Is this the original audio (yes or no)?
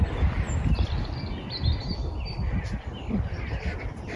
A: yes